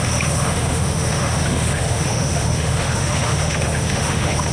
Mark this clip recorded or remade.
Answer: remade